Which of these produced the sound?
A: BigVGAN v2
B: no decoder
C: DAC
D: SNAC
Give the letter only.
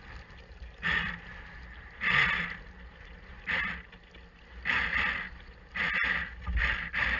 B